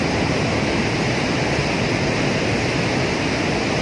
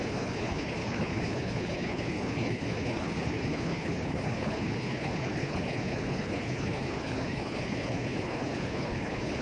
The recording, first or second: first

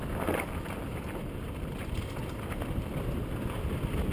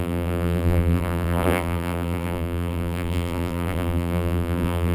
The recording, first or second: first